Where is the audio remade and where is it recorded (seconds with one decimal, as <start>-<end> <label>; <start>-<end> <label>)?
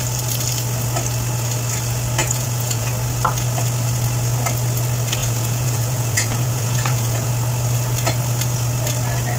0.0-2.2 recorded; 2.2-2.9 remade; 2.9-5.2 recorded; 5.2-7.3 remade; 7.3-9.4 recorded